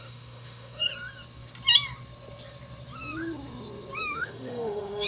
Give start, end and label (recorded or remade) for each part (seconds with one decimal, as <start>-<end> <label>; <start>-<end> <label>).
0.0-0.9 remade; 0.9-4.0 recorded; 4.0-5.1 remade